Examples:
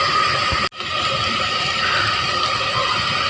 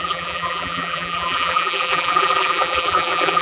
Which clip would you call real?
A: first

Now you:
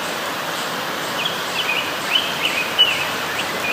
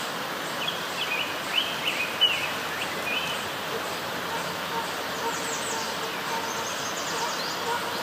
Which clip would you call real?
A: second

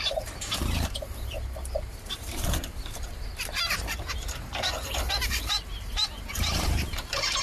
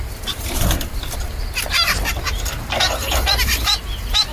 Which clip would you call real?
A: second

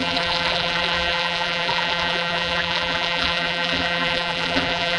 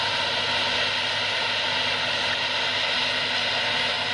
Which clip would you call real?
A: second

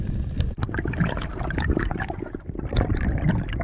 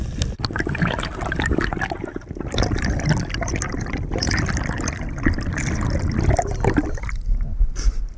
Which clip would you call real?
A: second